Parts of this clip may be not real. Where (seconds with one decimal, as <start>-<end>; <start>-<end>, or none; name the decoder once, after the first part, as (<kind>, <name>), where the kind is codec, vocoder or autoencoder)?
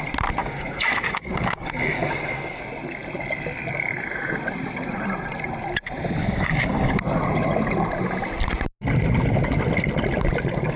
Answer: 0.4-2.6 (codec, DAC); 6.2-7.0